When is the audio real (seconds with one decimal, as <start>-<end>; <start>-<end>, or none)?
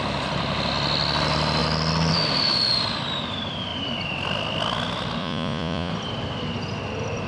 0.0-5.2; 5.9-7.3